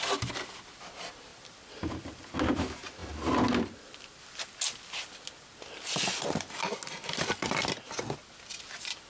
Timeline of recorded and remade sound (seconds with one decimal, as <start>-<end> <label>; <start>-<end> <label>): 0.0-1.3 recorded; 1.3-2.2 remade; 2.2-9.1 recorded